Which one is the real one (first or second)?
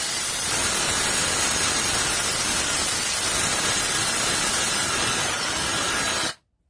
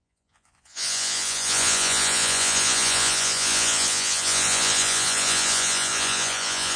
first